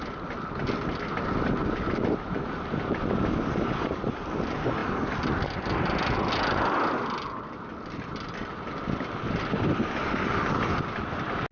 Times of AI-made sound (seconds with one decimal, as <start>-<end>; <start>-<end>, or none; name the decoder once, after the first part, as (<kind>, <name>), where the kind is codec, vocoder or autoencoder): none